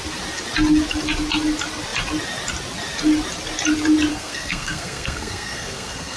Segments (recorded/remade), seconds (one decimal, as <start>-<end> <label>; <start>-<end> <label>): 0.0-4.1 recorded; 4.1-6.2 remade